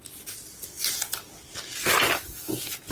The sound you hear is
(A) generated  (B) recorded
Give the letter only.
B